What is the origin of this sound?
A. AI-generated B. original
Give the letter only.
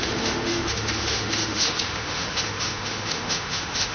A